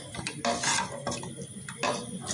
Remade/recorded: recorded